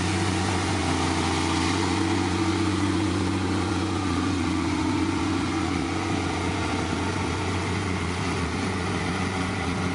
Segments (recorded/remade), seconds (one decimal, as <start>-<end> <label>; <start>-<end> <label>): 0.0-0.8 remade; 0.8-1.7 recorded; 1.7-9.9 remade